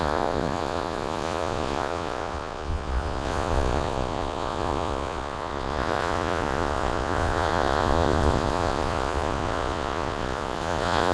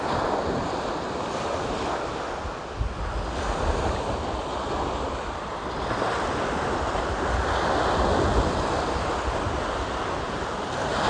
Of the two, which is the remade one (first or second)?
first